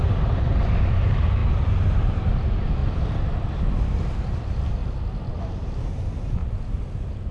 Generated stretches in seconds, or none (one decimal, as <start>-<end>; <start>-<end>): 0.0-1.4; 2.0-2.8; 4.1-4.8; 5.4-6.4